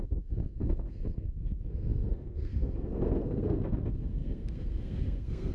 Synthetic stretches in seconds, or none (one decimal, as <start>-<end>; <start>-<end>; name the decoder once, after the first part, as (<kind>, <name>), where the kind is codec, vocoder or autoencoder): 0.0-5.5 (codec, SNAC)